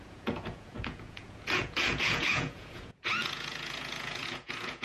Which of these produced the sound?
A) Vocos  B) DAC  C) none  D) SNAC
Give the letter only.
A